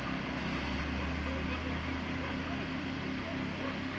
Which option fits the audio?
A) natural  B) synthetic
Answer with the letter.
A